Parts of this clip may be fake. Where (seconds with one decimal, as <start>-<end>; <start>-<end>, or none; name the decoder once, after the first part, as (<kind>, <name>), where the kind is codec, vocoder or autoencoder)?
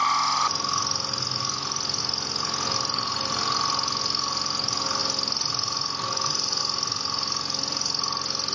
none